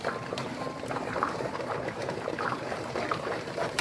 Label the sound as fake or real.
fake